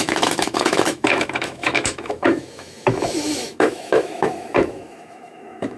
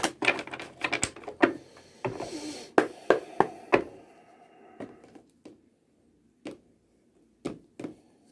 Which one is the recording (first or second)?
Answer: second